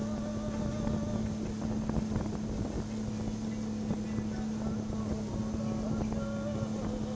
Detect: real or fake real